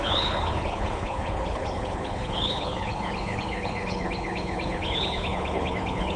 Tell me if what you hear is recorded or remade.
remade